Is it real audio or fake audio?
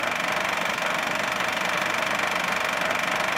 real